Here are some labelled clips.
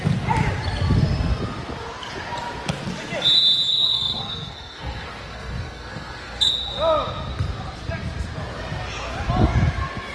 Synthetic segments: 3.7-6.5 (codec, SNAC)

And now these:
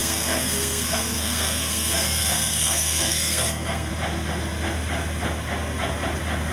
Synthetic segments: 0.0-3.9 (codec, SNAC)

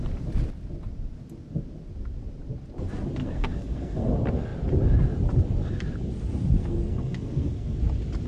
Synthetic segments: 3.2-4.1 (codec, SNAC); 6.6-7.8

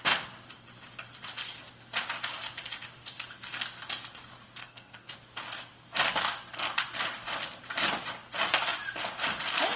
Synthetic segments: 4.6-5.1 (codec, SNAC)

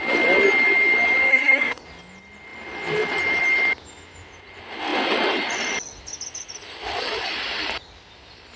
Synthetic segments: 1.3-1.8 (codec, SNAC)

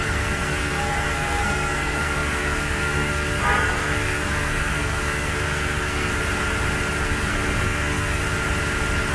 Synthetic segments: 0.0-6.1 (codec, SNAC); 7.0-8.2

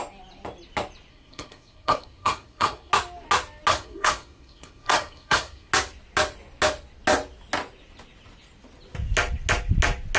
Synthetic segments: 1.1-2.9 (codec, SNAC); 3.7-5.7